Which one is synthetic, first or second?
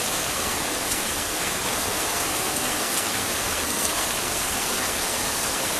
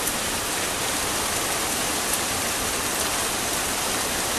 first